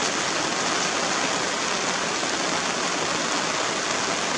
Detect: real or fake real